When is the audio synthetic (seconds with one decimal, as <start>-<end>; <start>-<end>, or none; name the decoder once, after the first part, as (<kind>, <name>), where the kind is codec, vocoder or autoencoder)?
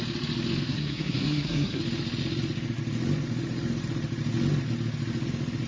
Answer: 0.7-1.8 (codec, SNAC)